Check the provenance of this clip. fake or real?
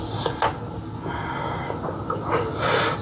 real